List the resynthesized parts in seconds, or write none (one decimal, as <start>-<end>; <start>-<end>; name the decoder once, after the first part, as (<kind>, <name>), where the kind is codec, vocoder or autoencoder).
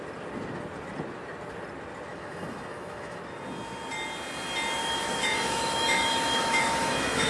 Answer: 2.1-3.2 (autoencoder, DAC-VAE); 4.8-7.3